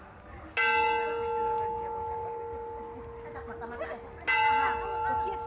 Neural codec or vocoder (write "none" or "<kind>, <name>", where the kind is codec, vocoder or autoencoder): none